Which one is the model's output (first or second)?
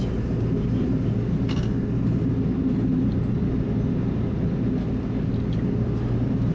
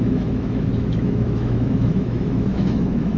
second